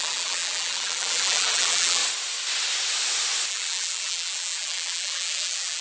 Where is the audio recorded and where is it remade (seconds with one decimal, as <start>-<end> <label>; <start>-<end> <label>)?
0.0-2.0 remade; 2.0-3.5 recorded; 3.5-5.8 remade